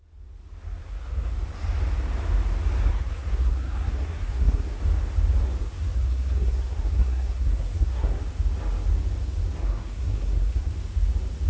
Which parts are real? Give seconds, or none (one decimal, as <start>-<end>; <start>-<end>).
0.0-0.8; 1.3-2.9; 4.8-5.6; 8.2-9.6; 10.7-11.5